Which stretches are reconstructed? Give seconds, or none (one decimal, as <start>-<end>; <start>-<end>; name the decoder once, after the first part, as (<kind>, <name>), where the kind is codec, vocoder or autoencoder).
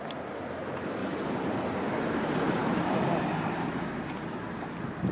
none